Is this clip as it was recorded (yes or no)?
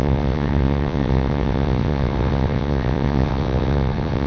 no